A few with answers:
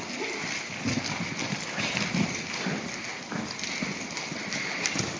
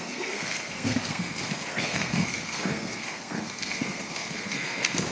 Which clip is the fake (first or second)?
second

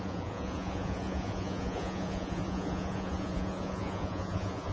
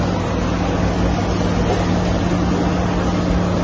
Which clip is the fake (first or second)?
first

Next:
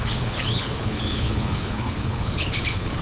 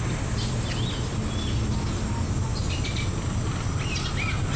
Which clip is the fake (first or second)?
first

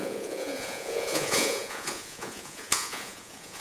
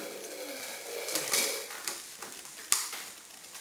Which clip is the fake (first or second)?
first